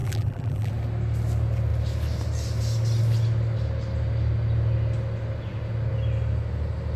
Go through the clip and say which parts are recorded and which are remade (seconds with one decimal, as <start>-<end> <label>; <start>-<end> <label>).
0.0-0.7 remade; 0.7-7.0 recorded